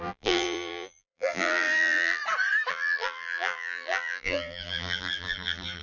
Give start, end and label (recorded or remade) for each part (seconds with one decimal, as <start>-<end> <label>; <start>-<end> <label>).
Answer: 0.0-2.2 remade; 2.2-2.7 recorded; 2.7-5.8 remade